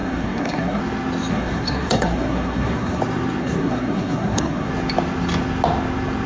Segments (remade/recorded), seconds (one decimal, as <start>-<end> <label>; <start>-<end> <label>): 0.0-0.8 remade; 0.8-1.3 recorded; 1.3-3.0 remade; 3.0-3.4 recorded; 3.4-4.7 remade; 4.7-6.3 recorded